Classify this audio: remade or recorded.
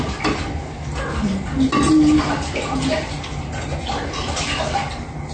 recorded